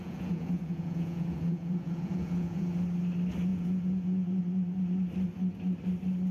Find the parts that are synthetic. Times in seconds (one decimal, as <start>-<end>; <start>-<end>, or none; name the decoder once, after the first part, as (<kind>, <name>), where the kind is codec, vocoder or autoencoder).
0.0-2.7 (vocoder, Vocos); 3.5-4.4